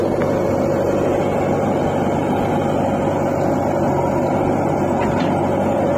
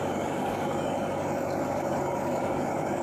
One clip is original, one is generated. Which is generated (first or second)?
second